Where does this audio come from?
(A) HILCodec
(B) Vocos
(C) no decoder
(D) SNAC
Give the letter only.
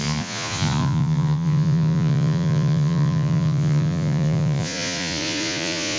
B